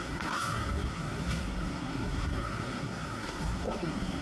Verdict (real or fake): fake